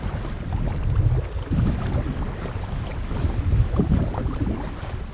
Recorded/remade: recorded